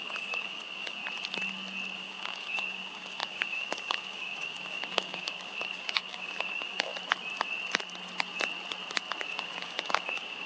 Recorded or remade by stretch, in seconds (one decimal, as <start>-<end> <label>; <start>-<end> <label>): 0.0-1.0 remade; 1.0-2.0 recorded; 2.0-6.9 remade; 6.9-9.2 recorded; 9.2-10.5 remade